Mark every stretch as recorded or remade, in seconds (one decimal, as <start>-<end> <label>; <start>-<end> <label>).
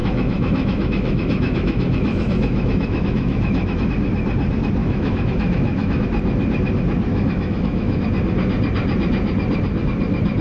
0.0-3.9 remade; 3.9-4.8 recorded; 4.8-6.0 remade; 6.0-7.1 recorded; 7.1-8.0 remade; 8.0-10.4 recorded